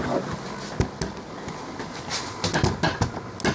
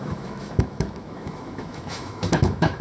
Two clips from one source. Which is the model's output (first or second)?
second